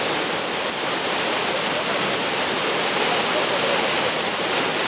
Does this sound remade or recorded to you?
recorded